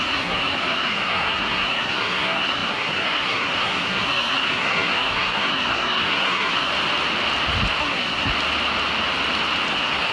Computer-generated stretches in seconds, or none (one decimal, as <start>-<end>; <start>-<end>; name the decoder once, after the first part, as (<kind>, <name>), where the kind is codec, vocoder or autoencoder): 0.0-6.7 (codec, SNAC); 7.8-8.3; 9.7-10.1